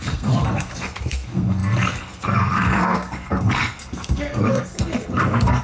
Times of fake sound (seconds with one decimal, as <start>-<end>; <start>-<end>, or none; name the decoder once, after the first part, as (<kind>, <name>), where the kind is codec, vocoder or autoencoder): 0.0-5.6 (codec, SNAC)